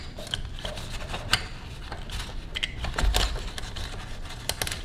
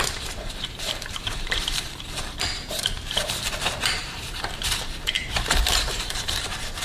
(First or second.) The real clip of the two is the first